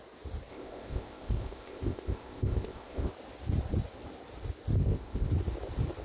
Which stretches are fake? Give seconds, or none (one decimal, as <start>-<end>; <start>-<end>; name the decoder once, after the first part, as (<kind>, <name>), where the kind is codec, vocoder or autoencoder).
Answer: 0.5-3.1 (codec, ZipCodec); 4.8-5.3